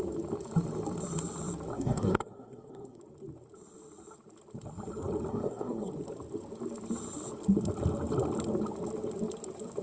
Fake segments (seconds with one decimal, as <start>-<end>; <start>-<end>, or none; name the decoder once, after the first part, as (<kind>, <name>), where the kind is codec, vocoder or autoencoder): 1.7-3.0 (codec, SNAC); 5.3-5.9